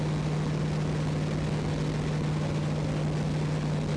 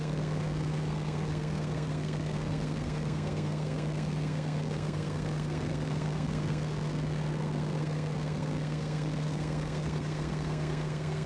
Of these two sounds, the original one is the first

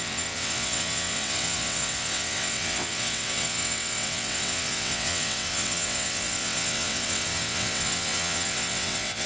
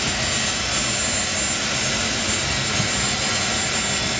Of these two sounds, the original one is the second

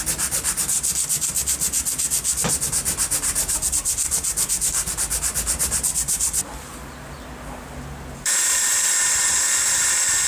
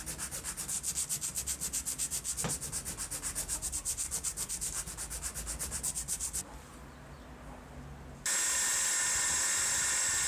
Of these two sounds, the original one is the second